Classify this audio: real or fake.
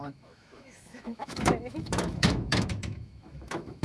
fake